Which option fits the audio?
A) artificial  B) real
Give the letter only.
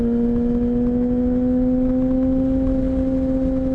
B